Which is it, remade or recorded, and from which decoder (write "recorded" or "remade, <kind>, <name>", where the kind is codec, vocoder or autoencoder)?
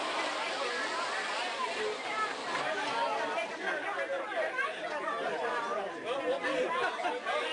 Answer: recorded